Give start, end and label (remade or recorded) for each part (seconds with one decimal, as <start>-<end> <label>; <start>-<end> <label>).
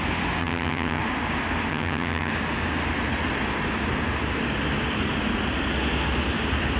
0.0-0.4 recorded; 0.4-1.0 remade; 1.0-1.7 recorded; 1.7-2.3 remade; 2.3-6.8 recorded